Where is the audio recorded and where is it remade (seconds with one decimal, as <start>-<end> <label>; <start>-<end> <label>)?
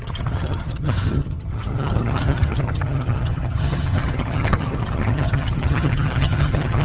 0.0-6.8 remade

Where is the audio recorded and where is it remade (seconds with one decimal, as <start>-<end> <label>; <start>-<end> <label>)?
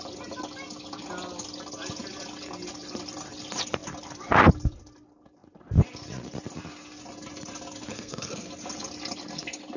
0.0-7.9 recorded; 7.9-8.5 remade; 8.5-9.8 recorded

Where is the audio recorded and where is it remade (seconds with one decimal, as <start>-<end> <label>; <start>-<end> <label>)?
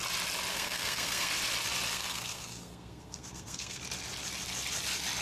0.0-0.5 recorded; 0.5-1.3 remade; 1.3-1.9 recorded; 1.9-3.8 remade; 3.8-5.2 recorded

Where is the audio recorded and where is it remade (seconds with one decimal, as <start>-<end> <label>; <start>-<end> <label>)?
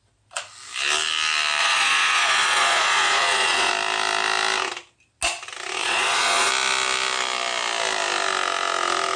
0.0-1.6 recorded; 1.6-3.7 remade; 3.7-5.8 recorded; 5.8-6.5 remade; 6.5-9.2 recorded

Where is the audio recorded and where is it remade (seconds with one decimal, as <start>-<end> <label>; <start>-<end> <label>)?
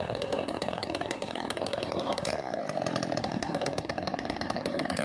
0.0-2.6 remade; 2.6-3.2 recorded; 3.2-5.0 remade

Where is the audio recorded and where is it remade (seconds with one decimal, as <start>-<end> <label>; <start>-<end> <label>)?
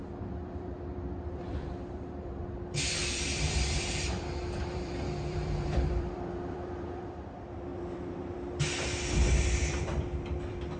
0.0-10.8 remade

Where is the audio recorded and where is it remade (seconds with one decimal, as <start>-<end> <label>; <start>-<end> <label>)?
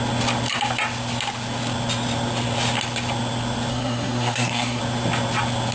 0.0-3.7 recorded; 3.7-4.8 remade; 4.8-5.7 recorded